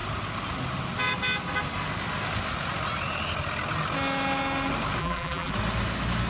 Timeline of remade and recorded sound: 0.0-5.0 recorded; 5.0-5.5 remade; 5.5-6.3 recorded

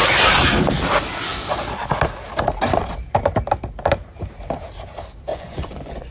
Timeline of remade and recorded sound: 0.0-5.3 recorded; 5.3-6.1 remade

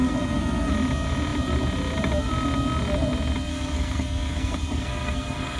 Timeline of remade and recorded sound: 0.0-0.7 remade; 0.7-3.5 recorded; 3.5-5.6 remade